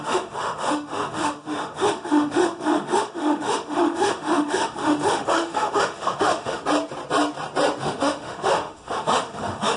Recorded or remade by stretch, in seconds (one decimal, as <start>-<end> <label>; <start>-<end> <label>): 0.0-6.6 remade; 6.6-7.8 recorded; 7.8-9.8 remade

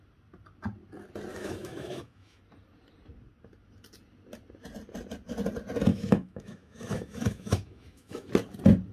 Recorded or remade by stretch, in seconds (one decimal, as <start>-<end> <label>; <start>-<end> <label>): 0.0-1.3 recorded; 1.3-2.4 remade; 2.4-5.9 recorded; 5.9-8.3 remade; 8.3-8.9 recorded

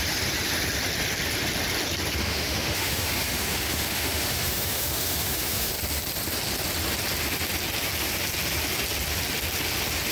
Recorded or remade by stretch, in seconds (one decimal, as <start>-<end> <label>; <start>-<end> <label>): 0.0-2.2 recorded; 2.2-5.7 remade; 5.7-10.1 recorded

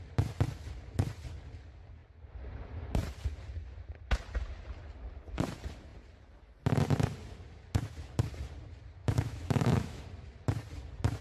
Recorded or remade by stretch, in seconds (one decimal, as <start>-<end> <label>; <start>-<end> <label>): 0.0-9.0 recorded; 9.0-10.0 remade; 10.0-11.2 recorded

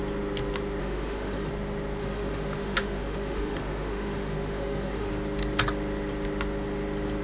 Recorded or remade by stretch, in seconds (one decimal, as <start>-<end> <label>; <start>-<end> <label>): 0.0-0.8 recorded; 0.8-1.5 remade; 1.5-2.0 recorded; 2.0-5.1 remade; 5.1-7.2 recorded